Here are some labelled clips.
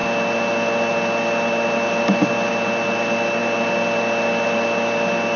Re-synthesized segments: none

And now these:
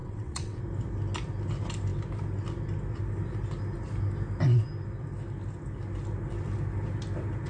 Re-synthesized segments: 0.0-0.6

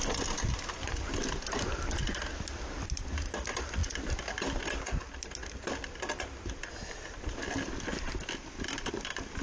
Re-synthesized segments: none

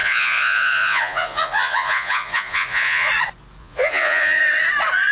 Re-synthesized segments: 0.0-3.1; 3.6-4.4

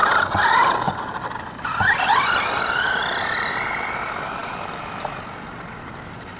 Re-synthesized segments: 0.0-3.2

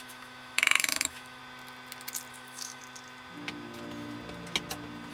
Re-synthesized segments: 0.0-1.4; 2.3-2.8